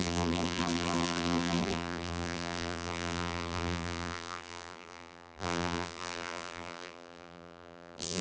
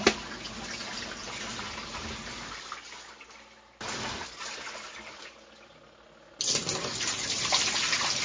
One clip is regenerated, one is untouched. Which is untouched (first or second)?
second